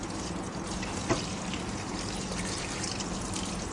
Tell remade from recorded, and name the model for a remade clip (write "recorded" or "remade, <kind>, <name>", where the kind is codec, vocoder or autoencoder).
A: remade, vocoder, BigVGAN v2